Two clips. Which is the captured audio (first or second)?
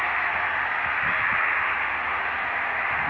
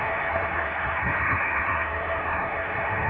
first